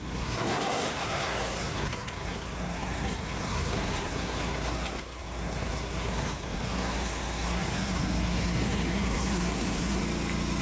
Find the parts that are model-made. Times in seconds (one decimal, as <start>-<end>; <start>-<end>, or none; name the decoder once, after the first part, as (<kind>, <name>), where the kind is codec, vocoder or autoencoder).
0.0-10.0 (codec, SNAC)